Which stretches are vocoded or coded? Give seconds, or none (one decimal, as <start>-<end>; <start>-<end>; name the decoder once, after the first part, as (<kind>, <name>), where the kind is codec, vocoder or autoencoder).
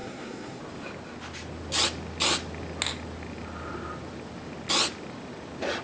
0.0-0.6 (codec, SNAC)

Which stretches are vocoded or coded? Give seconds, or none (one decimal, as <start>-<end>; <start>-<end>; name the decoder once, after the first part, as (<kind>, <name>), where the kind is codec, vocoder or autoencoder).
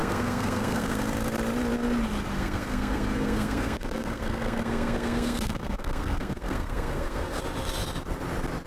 0.0-1.0 (codec, SNAC); 2.3-7.4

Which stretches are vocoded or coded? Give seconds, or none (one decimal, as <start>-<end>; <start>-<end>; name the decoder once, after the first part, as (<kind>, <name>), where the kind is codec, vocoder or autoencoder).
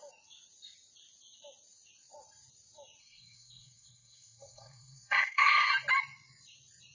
3.0-5.7 (codec, SNAC)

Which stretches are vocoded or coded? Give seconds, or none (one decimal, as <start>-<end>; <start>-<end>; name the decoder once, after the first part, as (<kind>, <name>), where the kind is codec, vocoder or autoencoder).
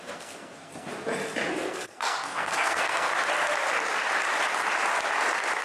0.0-0.9 (codec, SNAC); 1.5-3.1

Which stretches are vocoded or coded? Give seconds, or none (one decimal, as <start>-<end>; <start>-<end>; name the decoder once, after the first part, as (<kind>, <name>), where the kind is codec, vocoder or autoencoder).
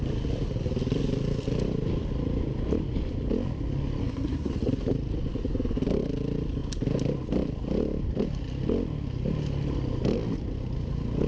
4.0-4.5 (codec, SNAC)